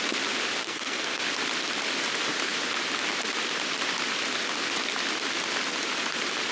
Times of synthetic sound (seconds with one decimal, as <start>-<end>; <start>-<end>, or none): 0.6-1.2